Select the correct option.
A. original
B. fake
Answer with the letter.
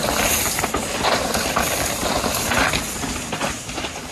A